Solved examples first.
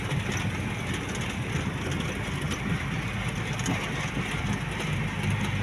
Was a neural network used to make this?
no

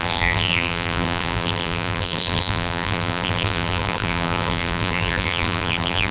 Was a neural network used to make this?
yes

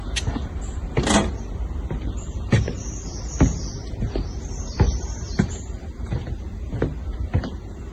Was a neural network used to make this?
yes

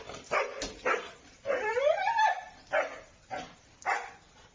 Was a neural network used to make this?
yes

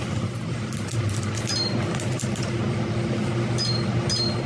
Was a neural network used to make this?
no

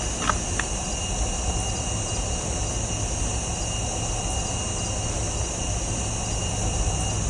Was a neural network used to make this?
no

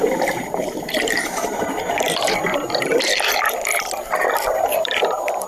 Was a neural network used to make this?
yes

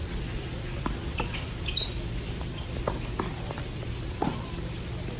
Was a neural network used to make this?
yes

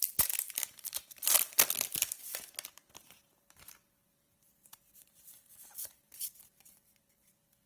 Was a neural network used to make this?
yes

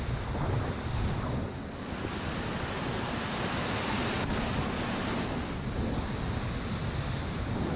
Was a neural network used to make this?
no